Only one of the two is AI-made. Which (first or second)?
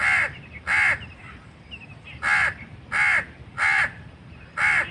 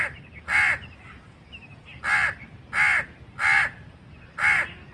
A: first